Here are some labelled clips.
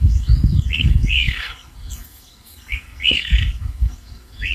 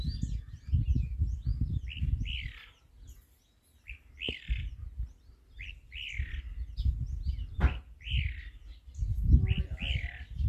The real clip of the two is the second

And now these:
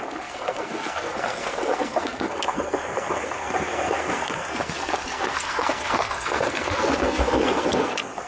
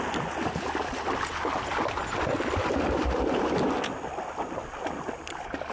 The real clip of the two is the second